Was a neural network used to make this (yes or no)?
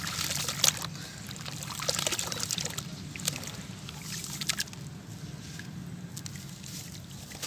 no